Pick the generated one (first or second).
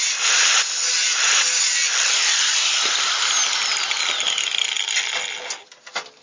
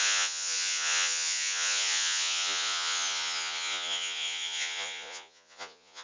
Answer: second